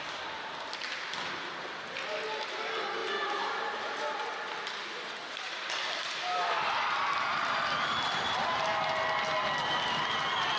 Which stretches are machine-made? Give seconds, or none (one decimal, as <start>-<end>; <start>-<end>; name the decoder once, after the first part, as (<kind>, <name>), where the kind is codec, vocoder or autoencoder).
none